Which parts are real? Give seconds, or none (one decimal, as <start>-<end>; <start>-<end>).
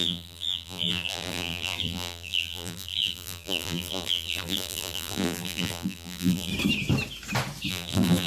6.5-7.7